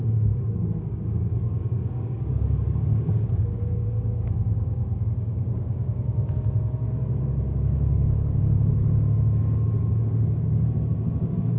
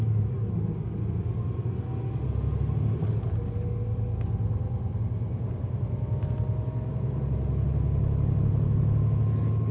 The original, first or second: second